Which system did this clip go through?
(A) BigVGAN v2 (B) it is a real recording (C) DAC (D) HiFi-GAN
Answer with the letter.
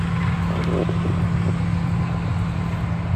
B